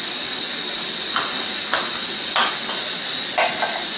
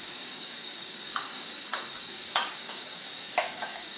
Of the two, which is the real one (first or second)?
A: first